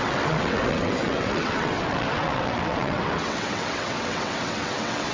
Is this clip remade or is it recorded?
remade